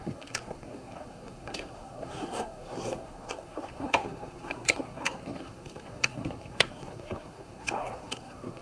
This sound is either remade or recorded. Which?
remade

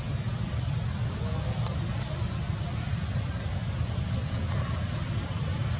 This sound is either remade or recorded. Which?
recorded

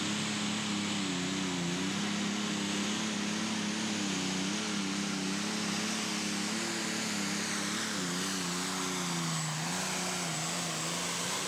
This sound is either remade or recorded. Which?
recorded